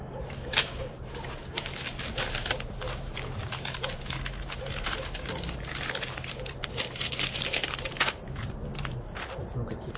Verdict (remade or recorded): remade